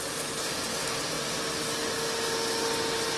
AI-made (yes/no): no